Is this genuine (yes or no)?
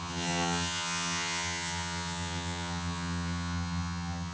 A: no